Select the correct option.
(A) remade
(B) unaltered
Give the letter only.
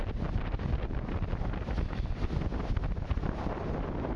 B